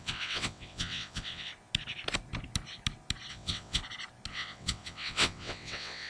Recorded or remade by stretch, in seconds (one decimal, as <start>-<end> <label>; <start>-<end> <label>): 0.0-1.5 remade; 1.5-3.3 recorded; 3.3-3.8 remade; 3.8-4.3 recorded; 4.3-6.1 remade